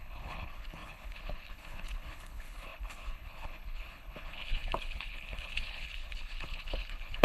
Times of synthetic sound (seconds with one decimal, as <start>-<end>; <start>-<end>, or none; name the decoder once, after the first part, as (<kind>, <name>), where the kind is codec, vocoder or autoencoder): 0.0-7.2 (codec, HILCodec)